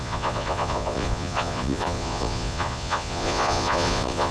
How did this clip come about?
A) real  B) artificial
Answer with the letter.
B